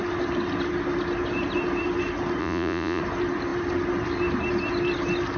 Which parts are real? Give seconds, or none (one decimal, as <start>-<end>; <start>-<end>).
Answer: 0.0-2.4; 3.0-5.4